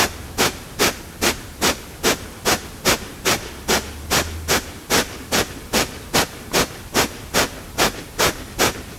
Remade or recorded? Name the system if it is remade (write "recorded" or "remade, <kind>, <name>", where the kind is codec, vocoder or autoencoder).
recorded